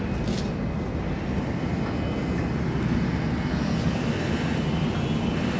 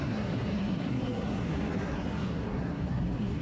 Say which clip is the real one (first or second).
first